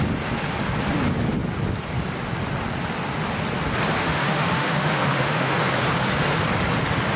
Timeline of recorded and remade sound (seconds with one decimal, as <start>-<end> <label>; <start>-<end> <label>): 0.0-4.0 recorded; 4.0-5.6 remade; 5.6-7.2 recorded

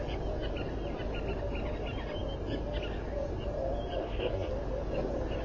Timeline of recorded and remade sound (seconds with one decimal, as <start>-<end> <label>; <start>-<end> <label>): 0.0-4.0 recorded; 4.0-4.5 remade; 4.5-5.4 recorded

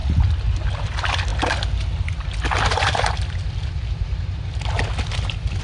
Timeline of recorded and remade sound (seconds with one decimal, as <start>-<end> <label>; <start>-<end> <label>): 0.0-5.6 recorded

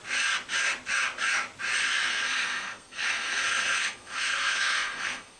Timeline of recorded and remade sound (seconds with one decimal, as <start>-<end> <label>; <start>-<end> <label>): 0.0-2.1 recorded; 2.1-5.4 remade